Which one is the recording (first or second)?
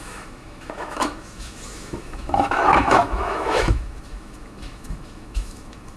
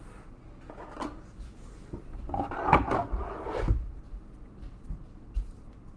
second